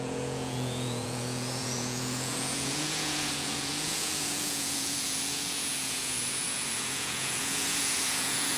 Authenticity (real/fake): fake